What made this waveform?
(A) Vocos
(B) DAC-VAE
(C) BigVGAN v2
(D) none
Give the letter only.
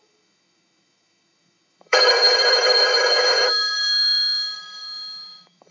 B